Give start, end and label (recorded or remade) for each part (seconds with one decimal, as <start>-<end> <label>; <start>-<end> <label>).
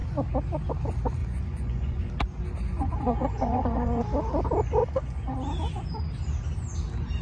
0.0-1.2 recorded; 1.2-2.1 remade; 2.1-2.7 recorded; 2.7-4.0 remade; 4.0-4.8 recorded; 4.8-5.4 remade; 5.4-7.2 recorded